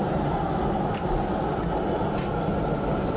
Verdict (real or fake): real